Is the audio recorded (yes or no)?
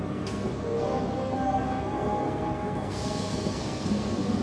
no